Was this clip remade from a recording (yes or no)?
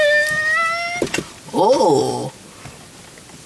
no